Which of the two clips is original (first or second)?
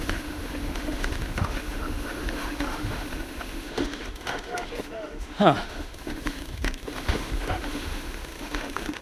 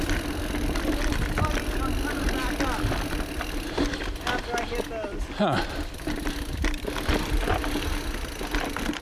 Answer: second